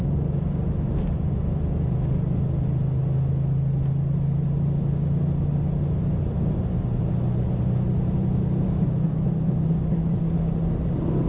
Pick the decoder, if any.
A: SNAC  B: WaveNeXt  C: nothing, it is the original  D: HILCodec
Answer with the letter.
C